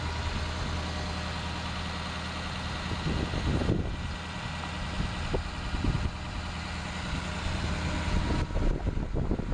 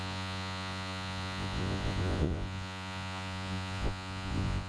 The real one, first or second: first